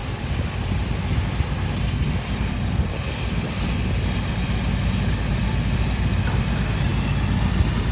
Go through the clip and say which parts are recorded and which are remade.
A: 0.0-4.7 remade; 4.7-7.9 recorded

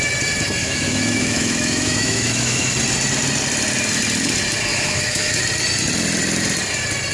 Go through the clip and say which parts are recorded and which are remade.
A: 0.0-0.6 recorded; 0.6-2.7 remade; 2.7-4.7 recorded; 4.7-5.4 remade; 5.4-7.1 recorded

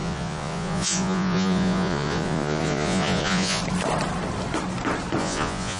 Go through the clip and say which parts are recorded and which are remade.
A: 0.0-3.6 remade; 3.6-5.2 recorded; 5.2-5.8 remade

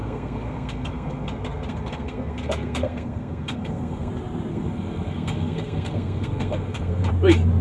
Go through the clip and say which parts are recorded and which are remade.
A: 0.0-4.1 remade; 4.1-4.5 recorded; 4.5-7.1 remade; 7.1-7.6 recorded

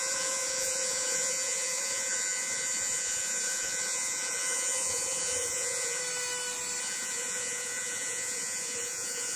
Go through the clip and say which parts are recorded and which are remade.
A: 0.0-6.0 remade; 6.0-6.8 recorded; 6.8-9.4 remade

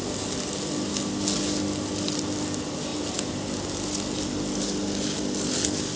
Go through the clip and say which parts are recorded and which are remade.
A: 0.0-6.0 recorded

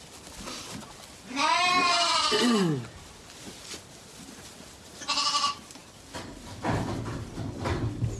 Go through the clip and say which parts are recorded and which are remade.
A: 0.0-8.2 recorded

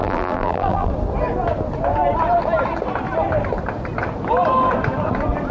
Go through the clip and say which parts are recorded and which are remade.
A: 0.0-0.9 remade; 0.9-5.5 recorded